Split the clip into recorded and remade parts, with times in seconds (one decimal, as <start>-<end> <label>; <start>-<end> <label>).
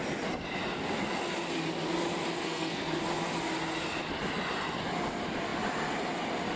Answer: 0.0-2.4 recorded; 2.4-3.0 remade; 3.0-6.6 recorded